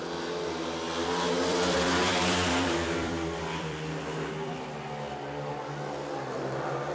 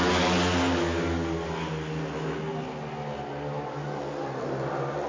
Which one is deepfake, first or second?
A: first